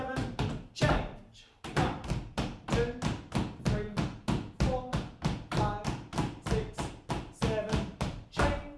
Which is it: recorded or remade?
recorded